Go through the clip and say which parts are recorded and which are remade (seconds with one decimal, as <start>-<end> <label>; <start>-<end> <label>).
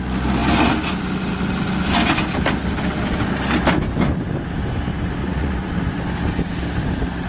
0.0-5.2 recorded; 5.2-5.7 remade; 5.7-7.3 recorded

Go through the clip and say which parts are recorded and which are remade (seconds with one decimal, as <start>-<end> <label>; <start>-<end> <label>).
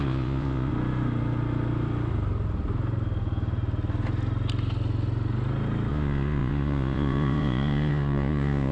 0.0-0.7 remade; 0.7-5.9 recorded; 5.9-8.7 remade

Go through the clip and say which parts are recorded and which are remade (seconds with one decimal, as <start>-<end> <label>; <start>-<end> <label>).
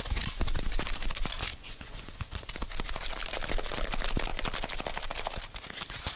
0.0-1.5 recorded; 1.5-2.5 remade; 2.5-6.2 recorded